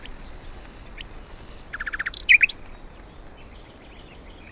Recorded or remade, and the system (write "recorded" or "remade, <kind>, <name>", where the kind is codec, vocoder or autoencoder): recorded